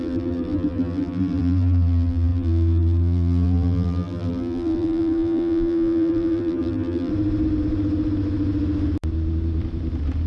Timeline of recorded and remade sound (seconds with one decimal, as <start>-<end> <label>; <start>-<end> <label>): 0.0-7.1 remade; 7.1-10.3 recorded